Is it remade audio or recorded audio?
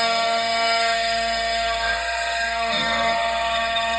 remade